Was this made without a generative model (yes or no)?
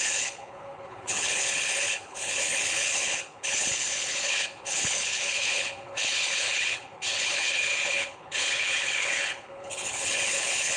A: no